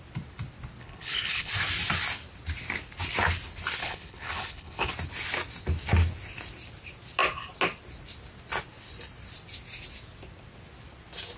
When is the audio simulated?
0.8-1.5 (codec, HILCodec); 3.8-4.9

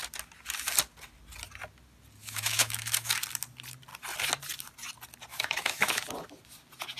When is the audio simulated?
2.2-3.1 (autoencoder, DAC-VAE); 5.3-6.0